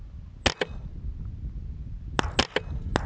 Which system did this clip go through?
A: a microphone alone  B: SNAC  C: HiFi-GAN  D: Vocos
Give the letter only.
A